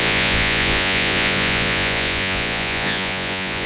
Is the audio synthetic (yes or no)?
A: yes